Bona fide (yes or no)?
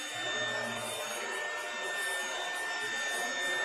yes